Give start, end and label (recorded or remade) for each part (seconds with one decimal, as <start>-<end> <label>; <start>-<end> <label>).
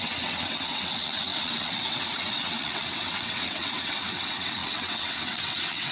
0.0-5.9 remade